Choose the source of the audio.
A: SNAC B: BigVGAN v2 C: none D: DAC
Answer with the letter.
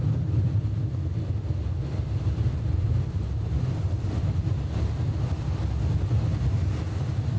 C